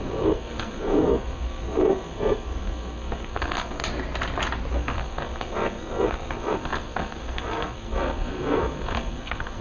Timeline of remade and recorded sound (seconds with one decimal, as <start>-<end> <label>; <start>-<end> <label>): 0.0-3.8 remade; 3.8-4.7 recorded; 4.7-9.6 remade